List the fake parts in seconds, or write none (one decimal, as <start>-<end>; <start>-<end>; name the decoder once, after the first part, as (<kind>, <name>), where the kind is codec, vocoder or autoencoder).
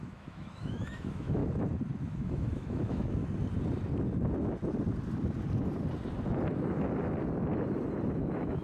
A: 0.0-1.4 (autoencoder, DAC-VAE); 2.0-3.2; 8.1-8.6